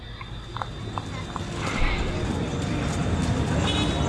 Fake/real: real